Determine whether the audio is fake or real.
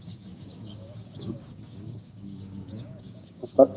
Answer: fake